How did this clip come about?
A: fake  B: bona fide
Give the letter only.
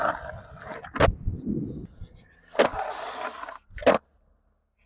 B